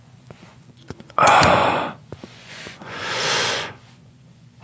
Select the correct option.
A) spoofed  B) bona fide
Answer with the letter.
A